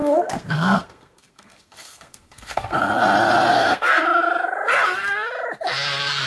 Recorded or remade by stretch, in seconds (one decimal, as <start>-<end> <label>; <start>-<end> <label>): 0.0-2.8 remade; 2.8-3.5 recorded; 3.5-4.0 remade; 4.0-6.3 recorded